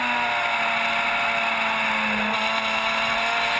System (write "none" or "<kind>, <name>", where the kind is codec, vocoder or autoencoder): none